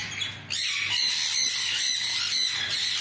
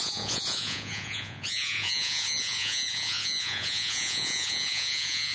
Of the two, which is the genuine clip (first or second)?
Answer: first